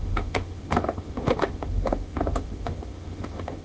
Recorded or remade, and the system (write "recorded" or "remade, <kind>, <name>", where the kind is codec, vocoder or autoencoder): remade, autoencoder, DAC-VAE